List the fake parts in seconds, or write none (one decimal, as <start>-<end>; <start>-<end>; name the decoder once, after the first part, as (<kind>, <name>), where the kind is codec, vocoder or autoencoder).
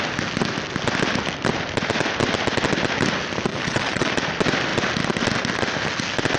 3.5-4.1 (vocoder, WaveNeXt)